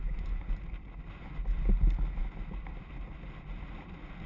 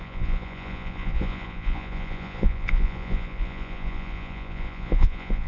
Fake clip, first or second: second